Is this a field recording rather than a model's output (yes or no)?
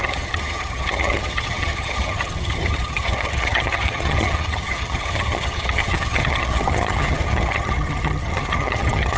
no